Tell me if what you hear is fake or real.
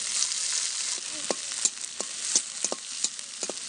real